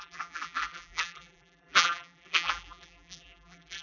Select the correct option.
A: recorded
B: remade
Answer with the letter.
B